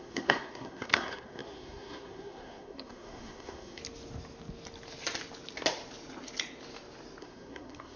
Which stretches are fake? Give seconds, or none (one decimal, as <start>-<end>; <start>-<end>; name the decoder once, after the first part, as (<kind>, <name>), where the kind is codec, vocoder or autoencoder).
0.0-3.8 (codec, SNAC); 7.2-8.0